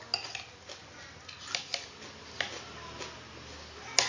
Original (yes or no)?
yes